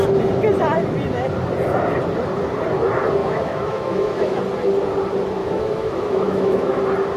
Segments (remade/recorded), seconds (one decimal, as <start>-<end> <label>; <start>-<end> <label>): 0.0-3.2 recorded; 3.2-4.4 remade; 4.4-5.4 recorded; 5.4-6.8 remade; 6.8-7.2 recorded